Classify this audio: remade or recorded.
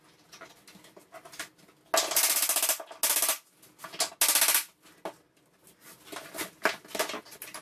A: recorded